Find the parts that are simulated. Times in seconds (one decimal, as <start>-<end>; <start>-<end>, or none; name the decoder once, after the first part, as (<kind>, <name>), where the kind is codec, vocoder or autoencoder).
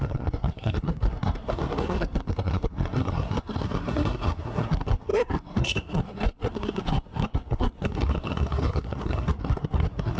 0.0-10.2 (codec, SNAC)